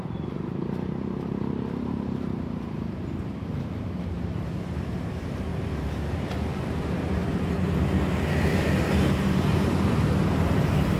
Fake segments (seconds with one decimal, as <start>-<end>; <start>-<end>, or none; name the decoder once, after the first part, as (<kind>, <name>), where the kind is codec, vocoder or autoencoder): 0.0-1.4 (vocoder, BigVGAN v2); 1.9-7.2; 9.0-11.0